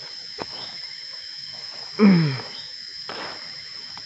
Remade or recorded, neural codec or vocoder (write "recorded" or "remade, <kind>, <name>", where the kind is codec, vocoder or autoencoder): remade, autoencoder, DAC-VAE